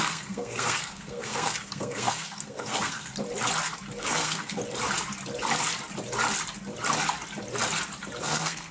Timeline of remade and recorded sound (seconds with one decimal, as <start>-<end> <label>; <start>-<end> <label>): 0.0-3.1 remade; 3.1-4.0 recorded; 4.0-4.6 remade; 4.6-8.2 recorded; 8.2-8.7 remade